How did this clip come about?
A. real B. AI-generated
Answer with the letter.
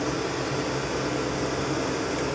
A